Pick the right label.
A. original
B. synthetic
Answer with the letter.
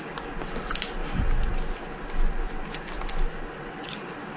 A